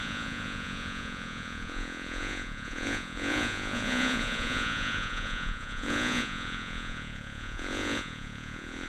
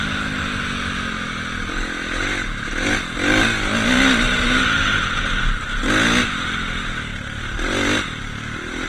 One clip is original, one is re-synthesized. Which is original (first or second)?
second